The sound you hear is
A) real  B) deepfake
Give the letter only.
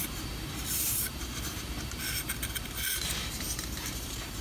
B